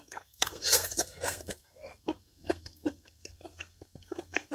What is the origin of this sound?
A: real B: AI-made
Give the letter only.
B